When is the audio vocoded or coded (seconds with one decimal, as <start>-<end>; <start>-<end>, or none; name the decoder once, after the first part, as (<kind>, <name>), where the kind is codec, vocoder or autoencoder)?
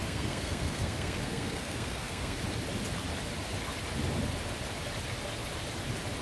0.0-2.4 (codec, SNAC)